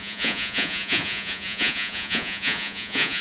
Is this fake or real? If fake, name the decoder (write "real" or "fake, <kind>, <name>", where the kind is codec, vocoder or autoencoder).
fake, vocoder, Vocos